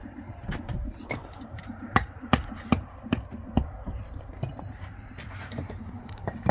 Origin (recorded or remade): remade